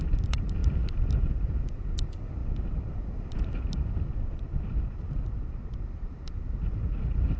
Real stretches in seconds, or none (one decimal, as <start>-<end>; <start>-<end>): 0.0-7.4